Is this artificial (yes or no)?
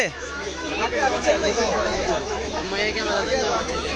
yes